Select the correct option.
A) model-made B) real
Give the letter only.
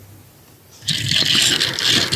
B